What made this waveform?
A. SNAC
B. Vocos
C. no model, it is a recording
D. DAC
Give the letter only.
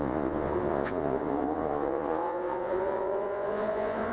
B